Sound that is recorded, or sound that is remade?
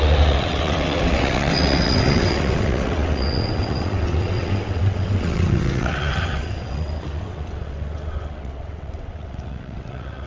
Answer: remade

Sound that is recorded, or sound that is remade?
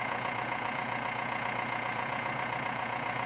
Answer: remade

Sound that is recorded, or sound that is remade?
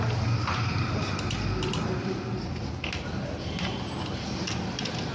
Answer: recorded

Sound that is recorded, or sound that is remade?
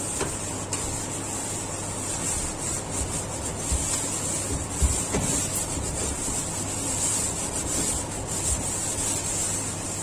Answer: recorded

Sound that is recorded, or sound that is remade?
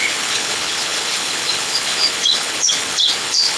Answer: remade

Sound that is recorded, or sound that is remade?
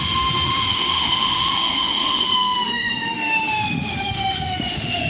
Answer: remade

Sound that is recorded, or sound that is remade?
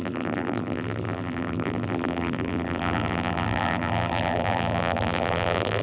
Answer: remade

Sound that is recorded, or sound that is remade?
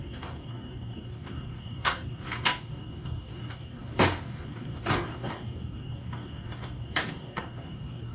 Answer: remade